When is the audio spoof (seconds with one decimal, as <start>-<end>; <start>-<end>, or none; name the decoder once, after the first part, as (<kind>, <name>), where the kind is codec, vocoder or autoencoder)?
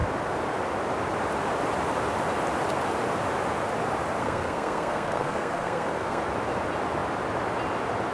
4.2-6.2 (codec, SNAC)